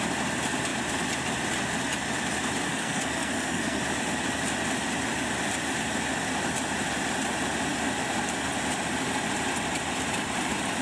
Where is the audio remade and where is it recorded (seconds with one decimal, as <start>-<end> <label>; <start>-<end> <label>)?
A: 0.0-2.7 recorded; 2.7-3.8 remade; 3.8-10.8 recorded